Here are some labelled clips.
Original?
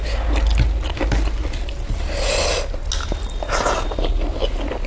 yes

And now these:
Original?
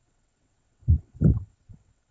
no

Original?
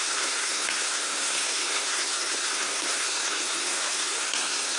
no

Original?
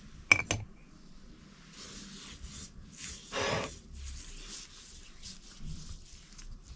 yes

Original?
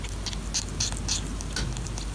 yes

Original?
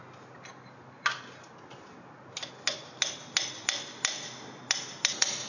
yes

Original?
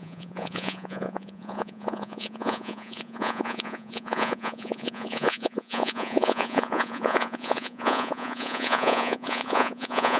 no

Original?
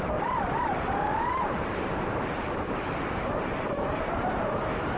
no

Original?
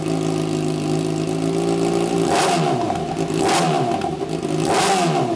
yes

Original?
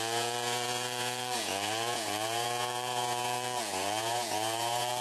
no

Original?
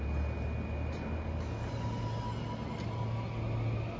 yes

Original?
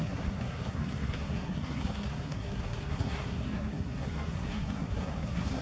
no